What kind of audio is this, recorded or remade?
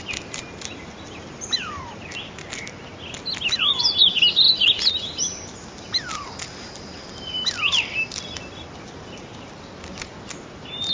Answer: recorded